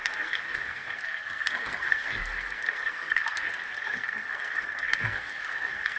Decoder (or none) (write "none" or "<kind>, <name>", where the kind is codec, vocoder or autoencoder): codec, SNAC